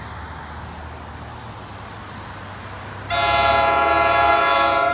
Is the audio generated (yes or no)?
no